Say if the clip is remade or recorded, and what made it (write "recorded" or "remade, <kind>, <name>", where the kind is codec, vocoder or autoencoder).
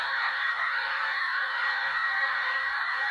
remade, codec, DAC